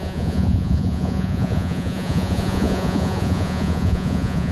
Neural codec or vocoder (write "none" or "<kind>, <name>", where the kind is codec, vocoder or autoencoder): vocoder, Vocos